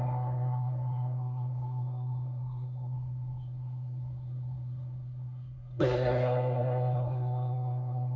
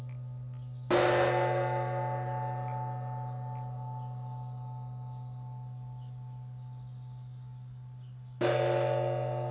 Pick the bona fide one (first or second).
second